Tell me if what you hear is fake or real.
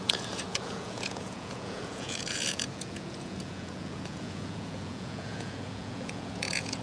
fake